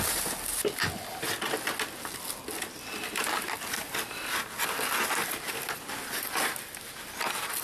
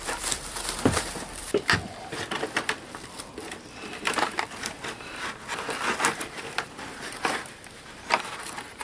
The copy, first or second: second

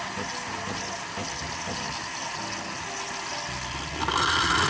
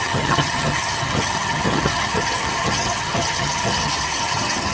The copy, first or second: second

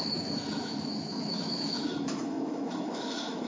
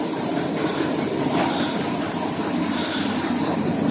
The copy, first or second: first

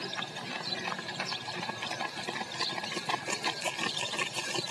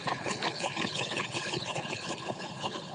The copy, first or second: second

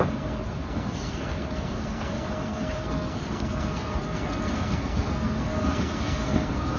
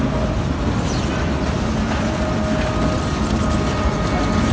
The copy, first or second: first